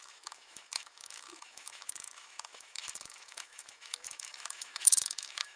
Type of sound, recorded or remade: remade